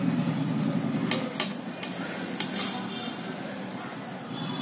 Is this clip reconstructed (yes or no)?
no